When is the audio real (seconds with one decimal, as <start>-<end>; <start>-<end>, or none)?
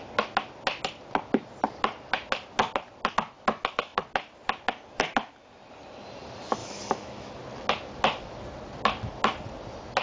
0.0-6.6; 7.3-10.0